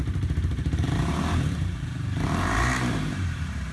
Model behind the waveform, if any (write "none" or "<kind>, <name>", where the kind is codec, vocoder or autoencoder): vocoder, BigVGAN v2